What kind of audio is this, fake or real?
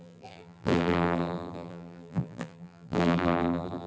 fake